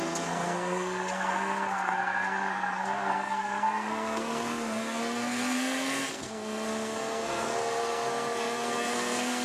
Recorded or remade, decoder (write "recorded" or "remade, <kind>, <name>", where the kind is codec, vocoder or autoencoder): remade, codec, SNAC